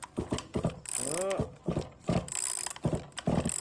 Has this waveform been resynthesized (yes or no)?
no